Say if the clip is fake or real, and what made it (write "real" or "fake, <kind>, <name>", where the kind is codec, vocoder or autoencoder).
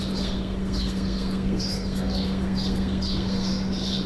fake, codec, SNAC